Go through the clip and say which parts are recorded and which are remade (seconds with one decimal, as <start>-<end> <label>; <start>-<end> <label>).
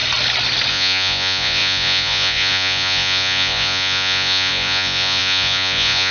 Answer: 0.0-0.7 recorded; 0.7-6.1 remade